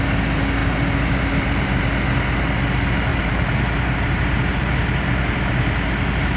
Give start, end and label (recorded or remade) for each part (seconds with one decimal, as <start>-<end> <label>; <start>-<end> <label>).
0.0-0.6 recorded; 0.6-1.8 remade; 1.8-3.1 recorded; 3.1-5.5 remade; 5.5-6.4 recorded